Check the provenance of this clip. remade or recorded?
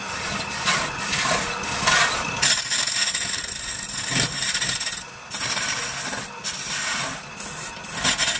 recorded